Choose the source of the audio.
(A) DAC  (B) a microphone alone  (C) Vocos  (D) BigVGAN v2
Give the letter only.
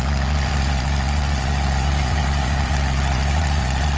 C